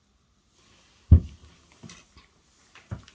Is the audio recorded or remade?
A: recorded